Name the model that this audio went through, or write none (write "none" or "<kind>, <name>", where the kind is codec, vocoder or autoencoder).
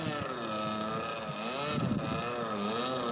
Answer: none